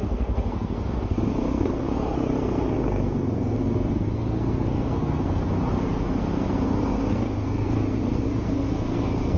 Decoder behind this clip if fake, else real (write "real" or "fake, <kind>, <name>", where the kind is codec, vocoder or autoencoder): fake, codec, SNAC